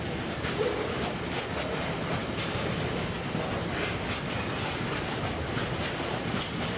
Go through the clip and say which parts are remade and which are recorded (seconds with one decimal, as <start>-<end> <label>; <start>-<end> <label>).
0.0-2.2 remade; 2.2-6.3 recorded; 6.3-6.8 remade